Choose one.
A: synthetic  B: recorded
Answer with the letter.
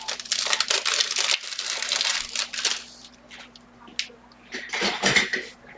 B